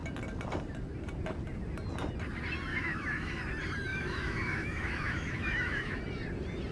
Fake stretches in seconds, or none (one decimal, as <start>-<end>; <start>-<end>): 2.7-3.3; 3.9-6.0